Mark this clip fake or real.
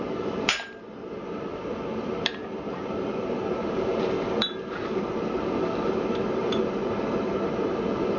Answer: fake